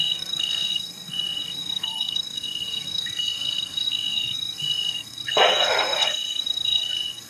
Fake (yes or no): yes